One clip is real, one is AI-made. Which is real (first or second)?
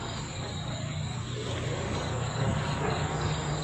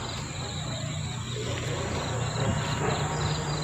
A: second